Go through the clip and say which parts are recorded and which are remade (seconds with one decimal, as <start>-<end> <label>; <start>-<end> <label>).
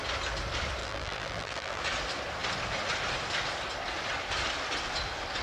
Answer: 0.0-0.8 recorded; 0.8-1.8 remade; 1.8-5.4 recorded